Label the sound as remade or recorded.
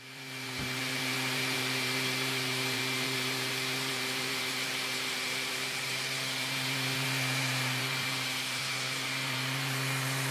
remade